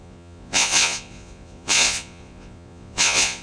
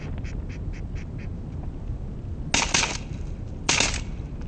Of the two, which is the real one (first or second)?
second